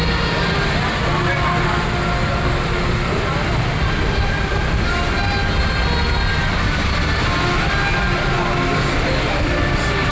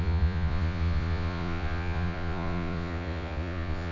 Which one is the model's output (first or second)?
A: second